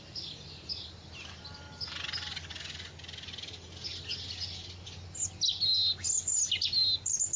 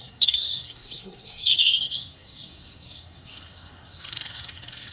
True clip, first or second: first